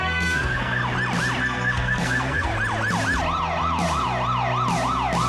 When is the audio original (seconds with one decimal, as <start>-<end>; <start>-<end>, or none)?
0.8-1.4; 2.5-5.3